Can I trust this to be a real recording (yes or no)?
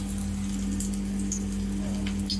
yes